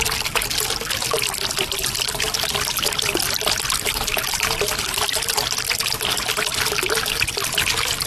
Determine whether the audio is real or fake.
real